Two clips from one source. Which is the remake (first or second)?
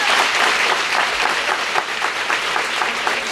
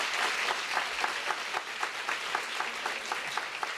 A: first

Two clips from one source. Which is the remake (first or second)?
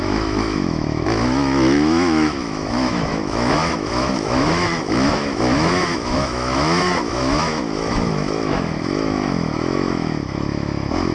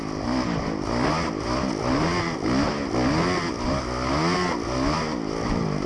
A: first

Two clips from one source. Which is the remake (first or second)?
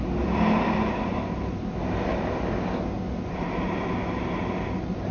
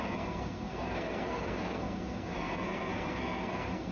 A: second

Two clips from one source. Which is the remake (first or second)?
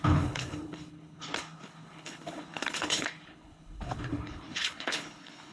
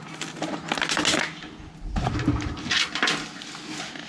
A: first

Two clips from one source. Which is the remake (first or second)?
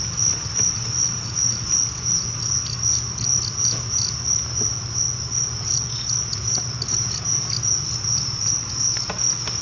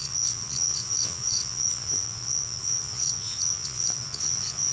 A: second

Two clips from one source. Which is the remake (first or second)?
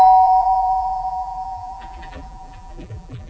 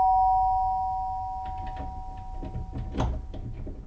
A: first